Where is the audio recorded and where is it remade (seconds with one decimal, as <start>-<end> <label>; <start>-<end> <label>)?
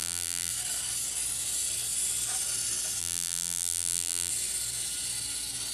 0.0-0.5 remade; 0.5-3.0 recorded; 3.0-4.3 remade; 4.3-5.7 recorded